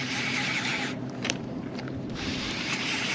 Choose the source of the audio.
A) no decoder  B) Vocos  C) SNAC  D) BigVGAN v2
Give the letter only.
D